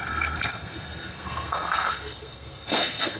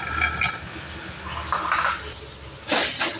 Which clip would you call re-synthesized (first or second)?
first